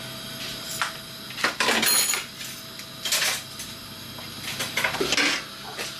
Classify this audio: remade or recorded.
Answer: recorded